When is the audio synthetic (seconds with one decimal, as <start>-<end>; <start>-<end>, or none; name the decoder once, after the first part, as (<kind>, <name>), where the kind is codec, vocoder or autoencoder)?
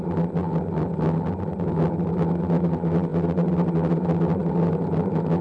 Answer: none